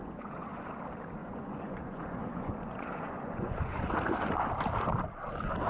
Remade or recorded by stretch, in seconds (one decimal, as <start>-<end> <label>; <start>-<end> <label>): 0.0-0.7 remade; 0.7-1.2 recorded; 1.2-3.9 remade; 3.9-5.7 recorded